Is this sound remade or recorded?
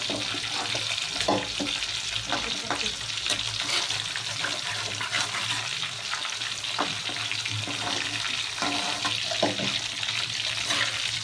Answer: recorded